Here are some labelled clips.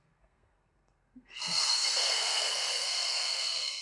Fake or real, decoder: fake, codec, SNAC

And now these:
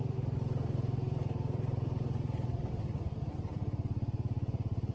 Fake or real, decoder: real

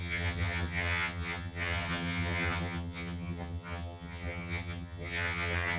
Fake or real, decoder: fake, vocoder, HiFi-GAN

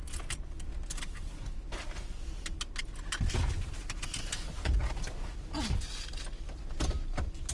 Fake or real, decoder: real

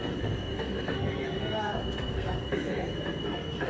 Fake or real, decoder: fake, codec, SNAC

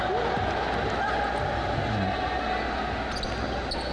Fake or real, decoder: real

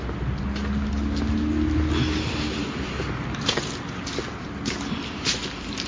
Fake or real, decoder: real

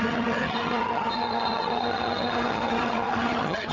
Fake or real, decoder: fake, vocoder, HiFi-GAN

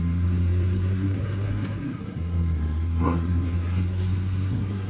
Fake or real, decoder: fake, codec, SNAC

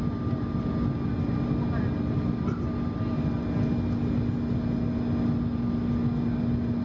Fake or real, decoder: real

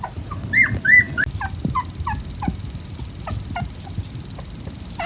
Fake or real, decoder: real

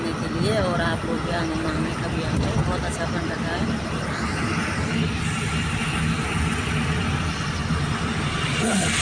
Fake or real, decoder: real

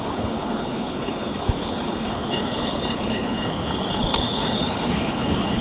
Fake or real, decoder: fake, codec, HILCodec